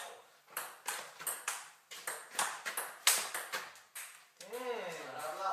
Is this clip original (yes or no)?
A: yes